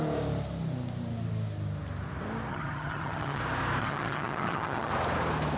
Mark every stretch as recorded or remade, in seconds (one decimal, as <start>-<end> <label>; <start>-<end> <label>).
0.0-2.5 recorded; 2.5-3.4 remade; 3.4-3.8 recorded; 3.8-4.9 remade; 4.9-5.6 recorded

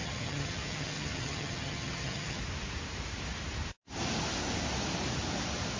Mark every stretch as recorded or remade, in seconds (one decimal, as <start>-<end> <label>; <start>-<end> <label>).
0.0-2.4 remade; 2.4-5.8 recorded

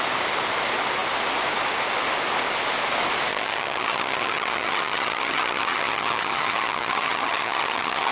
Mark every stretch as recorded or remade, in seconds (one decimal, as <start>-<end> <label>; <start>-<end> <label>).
0.0-3.3 recorded; 3.3-8.1 remade

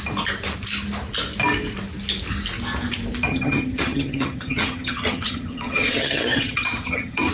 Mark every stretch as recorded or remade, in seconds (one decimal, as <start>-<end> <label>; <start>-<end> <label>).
0.0-3.3 recorded; 3.3-7.3 remade

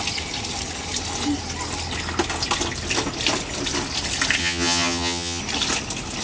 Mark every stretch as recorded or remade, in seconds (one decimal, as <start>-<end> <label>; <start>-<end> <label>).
0.0-4.4 recorded; 4.4-5.4 remade; 5.4-6.2 recorded

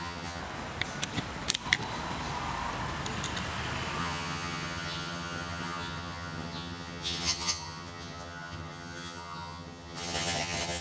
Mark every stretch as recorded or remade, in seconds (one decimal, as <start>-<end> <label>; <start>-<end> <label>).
0.0-0.4 remade; 0.4-4.0 recorded; 4.0-10.8 remade

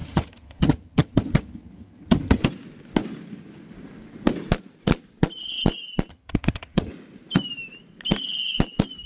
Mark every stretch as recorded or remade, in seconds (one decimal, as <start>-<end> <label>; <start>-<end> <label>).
0.0-2.4 remade; 2.4-6.1 recorded; 6.1-6.9 remade; 6.9-9.1 recorded

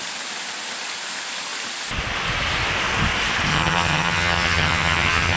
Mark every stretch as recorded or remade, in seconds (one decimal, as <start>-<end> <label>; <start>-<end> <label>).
0.0-3.5 recorded; 3.5-5.4 remade